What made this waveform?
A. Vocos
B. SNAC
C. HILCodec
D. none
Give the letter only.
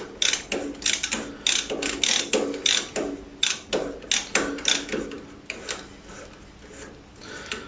D